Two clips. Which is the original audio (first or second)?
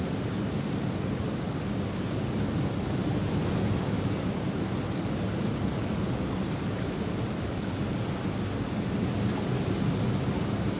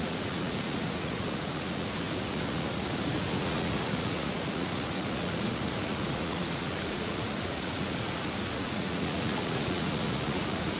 first